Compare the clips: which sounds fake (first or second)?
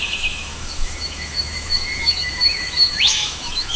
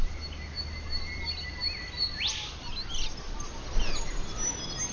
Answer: first